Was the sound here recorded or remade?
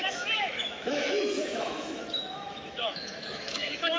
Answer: remade